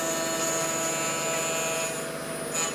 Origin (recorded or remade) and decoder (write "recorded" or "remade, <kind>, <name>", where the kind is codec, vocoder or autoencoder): recorded